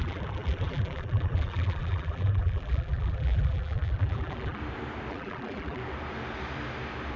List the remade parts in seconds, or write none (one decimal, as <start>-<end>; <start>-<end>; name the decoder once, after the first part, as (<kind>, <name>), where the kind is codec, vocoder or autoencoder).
0.0-4.6 (vocoder, BigVGAN v2); 5.1-5.8